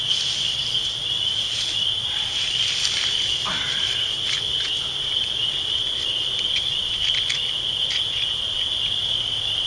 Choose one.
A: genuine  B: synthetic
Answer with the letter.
A